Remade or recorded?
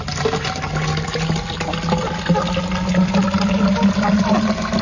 recorded